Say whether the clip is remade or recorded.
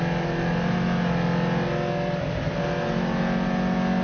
recorded